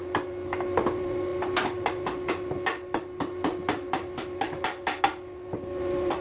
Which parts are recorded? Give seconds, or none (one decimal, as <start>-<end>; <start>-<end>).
0.0-6.2